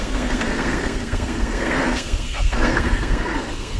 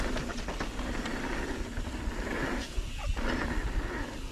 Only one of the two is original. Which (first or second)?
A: second